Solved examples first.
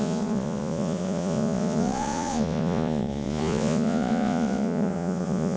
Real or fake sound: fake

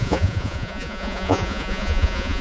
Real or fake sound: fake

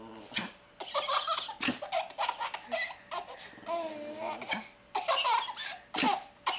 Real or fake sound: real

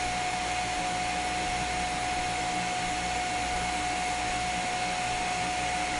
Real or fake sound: real